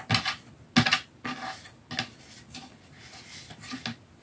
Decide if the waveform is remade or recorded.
recorded